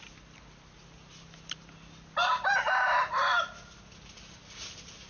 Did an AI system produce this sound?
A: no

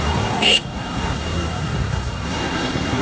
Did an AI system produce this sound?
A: yes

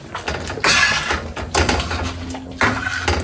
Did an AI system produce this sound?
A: no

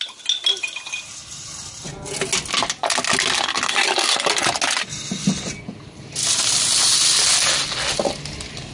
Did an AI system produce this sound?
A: no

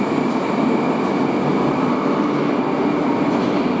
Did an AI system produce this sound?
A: no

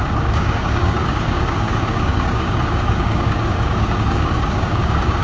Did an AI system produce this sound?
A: yes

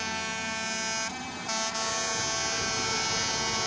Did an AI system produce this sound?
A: no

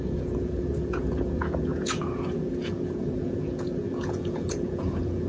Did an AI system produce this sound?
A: yes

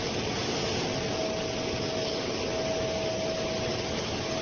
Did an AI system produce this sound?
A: no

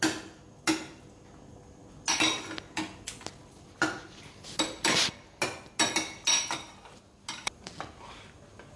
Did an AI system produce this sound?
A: no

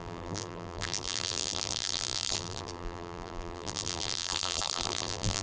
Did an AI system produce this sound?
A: yes